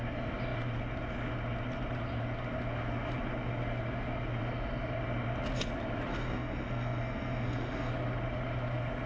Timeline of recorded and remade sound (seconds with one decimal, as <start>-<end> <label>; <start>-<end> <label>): 0.0-6.1 recorded; 6.1-7.9 remade; 7.9-9.1 recorded